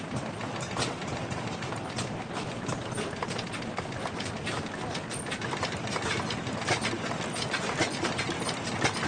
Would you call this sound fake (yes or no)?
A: no